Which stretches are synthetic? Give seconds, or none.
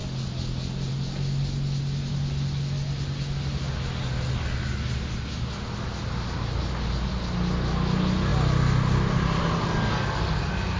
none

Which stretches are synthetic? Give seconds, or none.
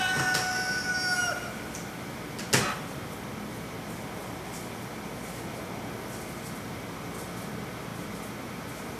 none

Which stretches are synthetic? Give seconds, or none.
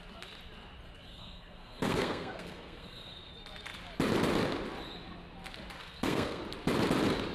1.1-3.3 (codec, SNAC); 5.8-6.4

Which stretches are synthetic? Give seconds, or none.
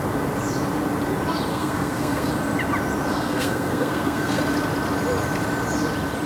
1.5-2.3 (codec, SNAC); 3.1-4.4